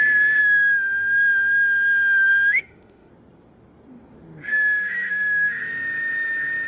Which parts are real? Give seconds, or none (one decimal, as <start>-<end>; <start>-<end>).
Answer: 0.0-0.4; 3.1-4.5